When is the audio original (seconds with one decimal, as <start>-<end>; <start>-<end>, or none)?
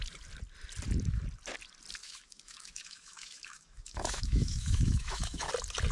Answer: 0.0-2.0; 5.5-5.9